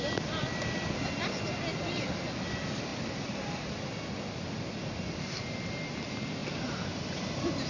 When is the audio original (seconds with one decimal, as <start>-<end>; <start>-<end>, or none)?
0.0-7.7